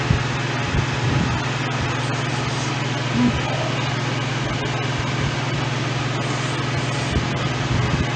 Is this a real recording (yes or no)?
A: yes